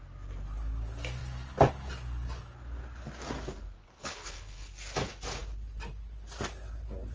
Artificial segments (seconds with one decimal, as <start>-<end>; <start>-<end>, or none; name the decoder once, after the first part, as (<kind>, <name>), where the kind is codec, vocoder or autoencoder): 3.8-4.7 (codec, HILCodec)